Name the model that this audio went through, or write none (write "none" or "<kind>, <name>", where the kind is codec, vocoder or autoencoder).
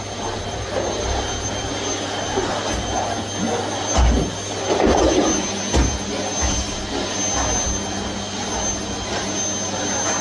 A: none